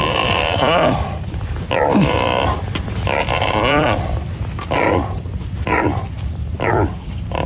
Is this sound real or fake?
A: fake